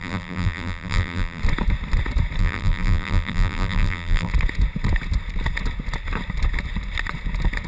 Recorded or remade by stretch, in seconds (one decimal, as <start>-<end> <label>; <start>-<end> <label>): 0.0-1.4 remade; 1.4-2.4 recorded; 2.4-4.3 remade; 4.3-7.7 recorded